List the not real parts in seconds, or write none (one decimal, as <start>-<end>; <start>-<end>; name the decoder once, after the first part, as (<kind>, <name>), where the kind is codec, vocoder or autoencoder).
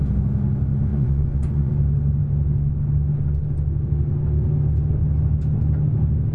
0.9-1.7 (vocoder, Vocos)